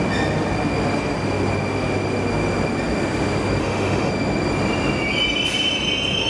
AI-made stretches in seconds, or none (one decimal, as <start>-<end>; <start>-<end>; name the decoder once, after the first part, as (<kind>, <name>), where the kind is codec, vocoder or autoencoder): 3.6-4.1 (autoencoder, DAC-VAE)